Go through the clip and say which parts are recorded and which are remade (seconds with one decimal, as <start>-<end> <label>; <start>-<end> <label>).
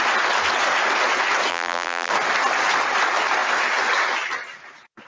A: 0.0-1.5 recorded; 1.5-2.1 remade; 2.1-5.1 recorded